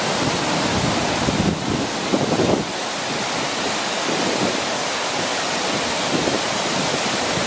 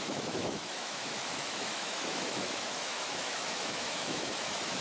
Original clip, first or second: first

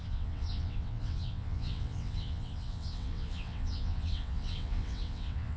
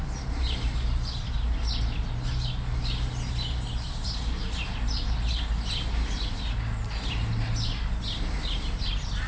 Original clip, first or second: second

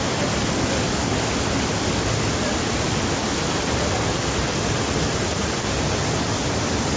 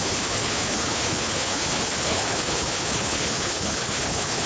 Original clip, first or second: first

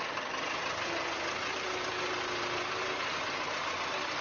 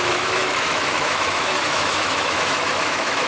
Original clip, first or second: first